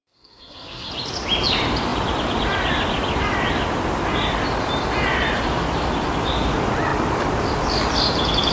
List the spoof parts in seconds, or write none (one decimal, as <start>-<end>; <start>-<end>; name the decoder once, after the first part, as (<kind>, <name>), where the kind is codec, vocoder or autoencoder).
0.0-0.9 (codec, SNAC)